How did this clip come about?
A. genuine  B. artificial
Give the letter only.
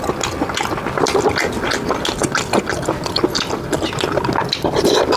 A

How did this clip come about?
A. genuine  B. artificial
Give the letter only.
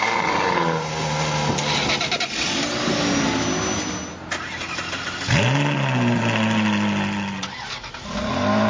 A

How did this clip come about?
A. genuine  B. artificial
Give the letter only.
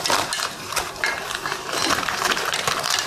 B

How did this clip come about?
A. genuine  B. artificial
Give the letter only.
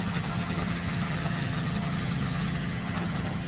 B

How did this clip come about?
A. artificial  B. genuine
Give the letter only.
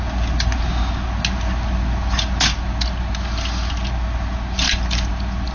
B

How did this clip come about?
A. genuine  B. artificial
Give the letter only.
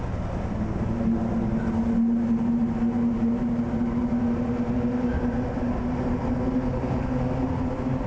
A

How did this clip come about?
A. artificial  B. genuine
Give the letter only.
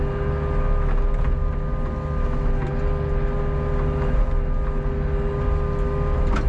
B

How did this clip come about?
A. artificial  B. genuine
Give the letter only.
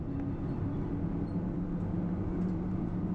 B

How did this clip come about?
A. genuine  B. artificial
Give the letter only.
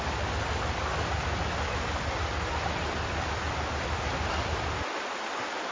A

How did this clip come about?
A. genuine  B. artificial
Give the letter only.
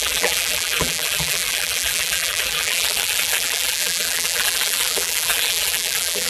B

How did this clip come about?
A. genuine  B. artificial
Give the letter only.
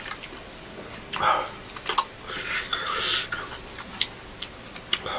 A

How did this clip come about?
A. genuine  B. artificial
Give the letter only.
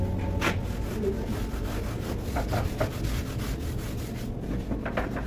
A